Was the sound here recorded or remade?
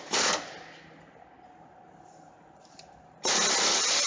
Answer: recorded